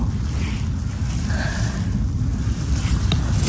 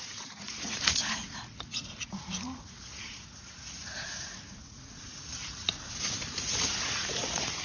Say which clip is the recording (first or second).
first